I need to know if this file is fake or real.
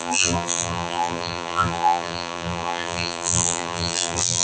fake